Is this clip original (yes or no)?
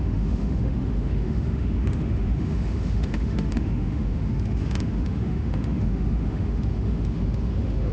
no